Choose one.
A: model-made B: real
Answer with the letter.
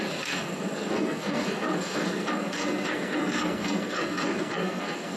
A